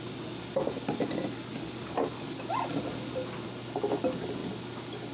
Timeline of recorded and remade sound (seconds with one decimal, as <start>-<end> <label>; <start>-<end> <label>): 0.0-5.1 recorded